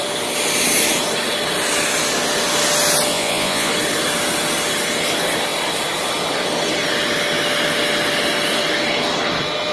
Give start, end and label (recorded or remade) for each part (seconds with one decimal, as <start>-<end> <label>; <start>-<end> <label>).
0.0-3.1 recorded; 3.1-3.7 remade; 3.7-9.7 recorded